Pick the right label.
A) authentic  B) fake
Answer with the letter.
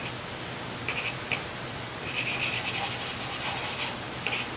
A